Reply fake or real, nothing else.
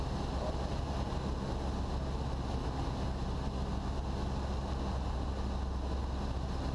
real